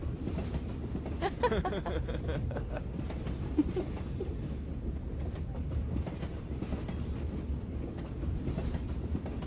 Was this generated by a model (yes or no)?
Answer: no